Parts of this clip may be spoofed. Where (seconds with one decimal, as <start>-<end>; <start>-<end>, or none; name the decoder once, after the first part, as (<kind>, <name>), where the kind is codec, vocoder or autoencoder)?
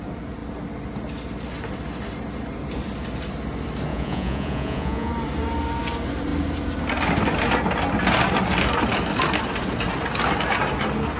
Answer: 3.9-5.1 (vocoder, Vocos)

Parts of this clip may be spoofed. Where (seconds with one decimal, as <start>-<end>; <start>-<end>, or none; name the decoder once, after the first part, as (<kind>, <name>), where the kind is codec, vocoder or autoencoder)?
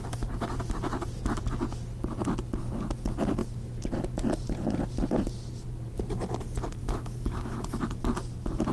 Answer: 6.8-7.8 (autoencoder, DAC-VAE)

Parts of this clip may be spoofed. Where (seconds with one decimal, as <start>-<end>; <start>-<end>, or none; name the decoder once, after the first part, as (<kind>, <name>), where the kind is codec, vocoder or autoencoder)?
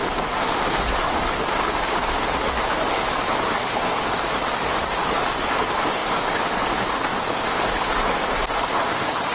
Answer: 5.0-5.5 (vocoder, BigVGAN v2)